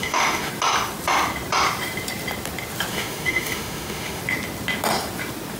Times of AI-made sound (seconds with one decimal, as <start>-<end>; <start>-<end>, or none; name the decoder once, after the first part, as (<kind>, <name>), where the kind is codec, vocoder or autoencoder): 0.0-0.5 (autoencoder, DAC-VAE); 2.9-4.2